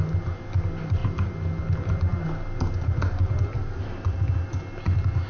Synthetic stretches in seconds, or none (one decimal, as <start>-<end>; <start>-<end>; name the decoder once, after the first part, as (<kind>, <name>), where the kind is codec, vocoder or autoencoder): none